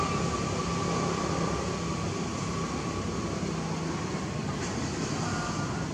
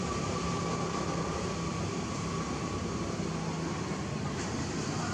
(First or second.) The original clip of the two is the first